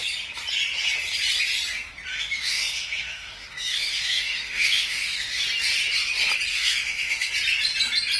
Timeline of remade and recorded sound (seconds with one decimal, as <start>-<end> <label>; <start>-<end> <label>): 0.0-2.1 recorded; 2.1-5.4 remade; 5.4-6.5 recorded; 6.5-7.3 remade; 7.3-8.2 recorded